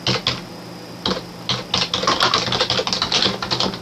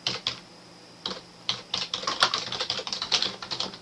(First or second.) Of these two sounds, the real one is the first